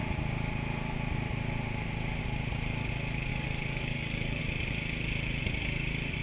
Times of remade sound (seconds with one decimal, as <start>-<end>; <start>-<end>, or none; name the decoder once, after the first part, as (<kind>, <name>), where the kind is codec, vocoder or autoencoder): 3.3-4.4 (codec, DAC)